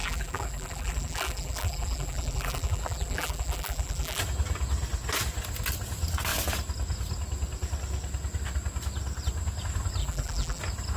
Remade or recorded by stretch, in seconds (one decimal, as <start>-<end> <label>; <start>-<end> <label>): 0.0-4.2 remade; 4.2-10.0 recorded; 10.0-10.6 remade; 10.6-11.0 recorded